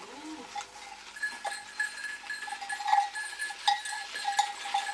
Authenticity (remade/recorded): recorded